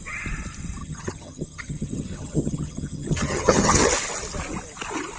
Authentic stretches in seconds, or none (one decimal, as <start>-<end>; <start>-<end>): 0.0-0.8; 3.9-5.2